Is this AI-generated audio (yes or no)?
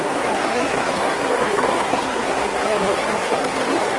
yes